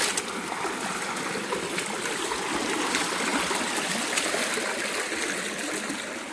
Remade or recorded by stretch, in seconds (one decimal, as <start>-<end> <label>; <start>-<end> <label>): 0.0-6.3 recorded